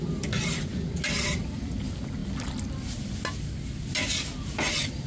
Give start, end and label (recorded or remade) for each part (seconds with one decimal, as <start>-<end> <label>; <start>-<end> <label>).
0.0-5.1 recorded